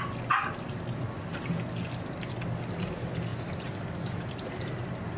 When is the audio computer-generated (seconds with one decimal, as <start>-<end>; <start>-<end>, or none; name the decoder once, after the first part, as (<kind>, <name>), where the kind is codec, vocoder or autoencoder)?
3.3-5.2 (vocoder, BigVGAN v2)